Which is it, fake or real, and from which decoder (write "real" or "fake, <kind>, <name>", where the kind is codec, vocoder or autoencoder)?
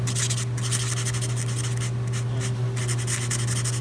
real